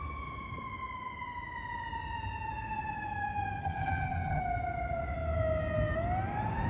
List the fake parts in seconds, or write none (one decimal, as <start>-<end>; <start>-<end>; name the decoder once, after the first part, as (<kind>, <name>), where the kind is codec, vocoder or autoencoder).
3.6-4.4 (vocoder, HiFi-GAN)